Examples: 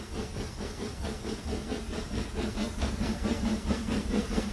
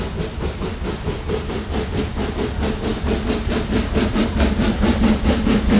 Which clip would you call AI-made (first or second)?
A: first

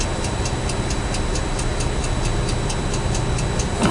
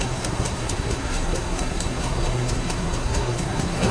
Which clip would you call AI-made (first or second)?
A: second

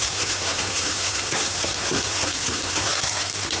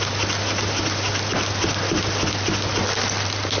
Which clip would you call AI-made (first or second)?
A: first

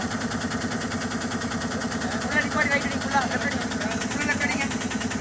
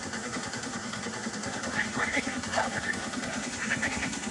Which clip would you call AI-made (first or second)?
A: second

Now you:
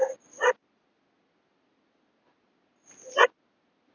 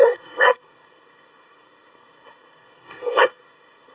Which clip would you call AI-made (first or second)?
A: second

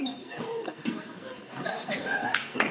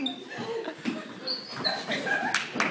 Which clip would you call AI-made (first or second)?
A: first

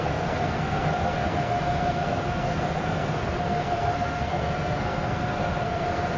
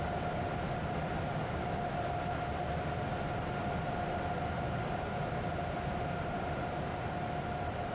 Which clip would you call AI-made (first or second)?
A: first